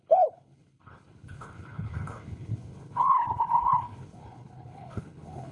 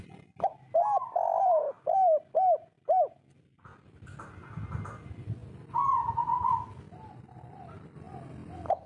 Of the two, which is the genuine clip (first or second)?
second